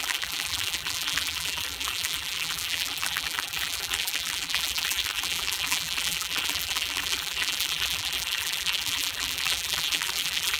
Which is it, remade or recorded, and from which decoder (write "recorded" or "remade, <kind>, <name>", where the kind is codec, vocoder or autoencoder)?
remade, vocoder, BigVGAN v2